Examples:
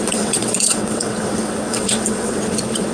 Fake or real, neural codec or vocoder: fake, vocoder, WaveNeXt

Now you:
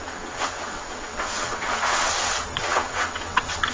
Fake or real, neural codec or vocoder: fake, vocoder, WaveNeXt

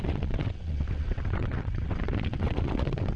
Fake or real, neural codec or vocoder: fake, vocoder, WaveNeXt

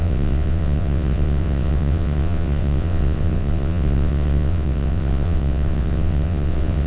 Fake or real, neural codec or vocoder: fake, vocoder, WaveNeXt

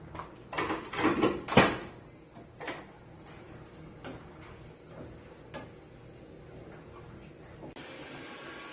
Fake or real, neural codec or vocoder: real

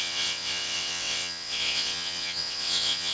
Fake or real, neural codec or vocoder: fake, vocoder, WaveNeXt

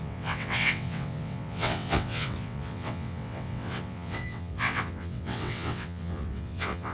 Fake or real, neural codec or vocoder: fake, vocoder, WaveNeXt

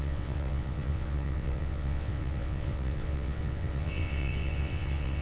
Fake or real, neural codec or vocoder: fake, vocoder, WaveNeXt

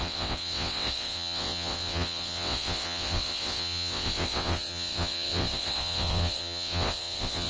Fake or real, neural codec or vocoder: fake, vocoder, WaveNeXt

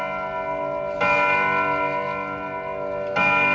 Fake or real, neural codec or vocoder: real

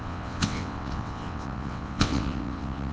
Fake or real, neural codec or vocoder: fake, vocoder, WaveNeXt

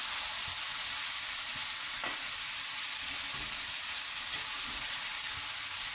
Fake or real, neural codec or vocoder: real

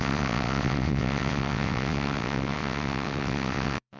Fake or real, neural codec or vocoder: fake, vocoder, WaveNeXt